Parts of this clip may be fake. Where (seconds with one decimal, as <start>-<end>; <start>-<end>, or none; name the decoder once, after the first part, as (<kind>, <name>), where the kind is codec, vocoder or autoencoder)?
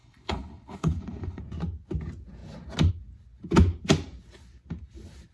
0.0-1.4 (codec, HILCodec)